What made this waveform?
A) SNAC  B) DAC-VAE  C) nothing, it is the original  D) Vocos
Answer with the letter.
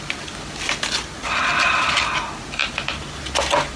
C